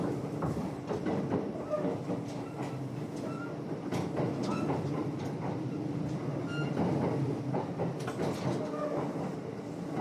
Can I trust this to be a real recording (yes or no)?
yes